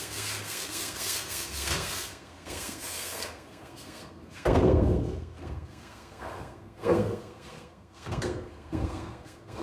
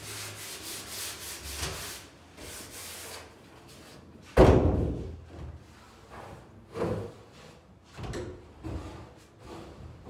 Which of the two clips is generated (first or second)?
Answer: first